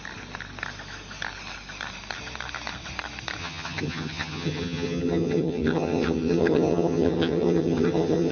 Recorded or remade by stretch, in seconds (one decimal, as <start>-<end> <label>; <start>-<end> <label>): 0.0-3.4 recorded; 3.4-8.3 remade